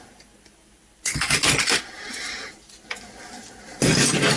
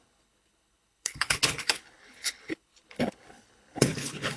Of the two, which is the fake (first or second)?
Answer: second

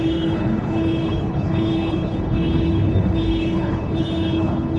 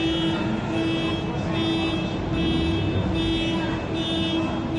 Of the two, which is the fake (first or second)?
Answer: first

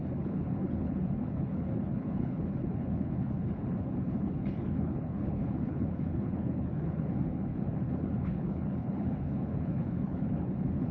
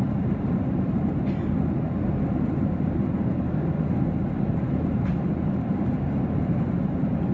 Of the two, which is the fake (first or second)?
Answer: first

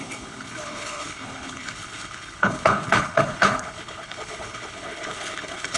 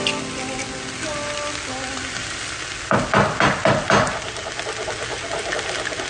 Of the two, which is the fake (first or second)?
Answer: first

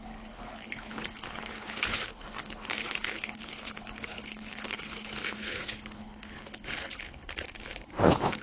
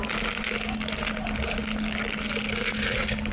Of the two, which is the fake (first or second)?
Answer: first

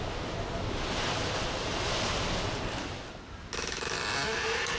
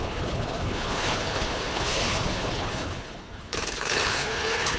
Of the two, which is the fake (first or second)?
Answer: second